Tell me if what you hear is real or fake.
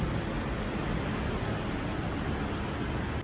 real